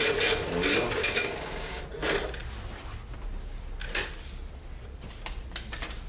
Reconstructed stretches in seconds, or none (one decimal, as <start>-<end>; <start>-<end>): 1.0-1.8